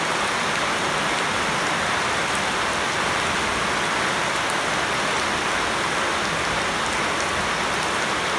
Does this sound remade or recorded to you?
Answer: recorded